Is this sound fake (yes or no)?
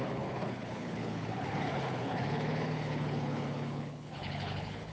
yes